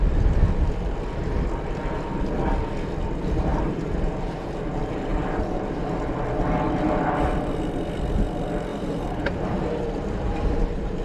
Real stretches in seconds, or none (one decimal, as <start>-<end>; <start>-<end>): 0.0-3.5; 4.5-5.1; 5.8-8.7